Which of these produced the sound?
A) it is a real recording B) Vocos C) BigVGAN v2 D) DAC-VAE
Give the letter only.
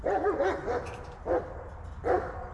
A